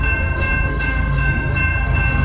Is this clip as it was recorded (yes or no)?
no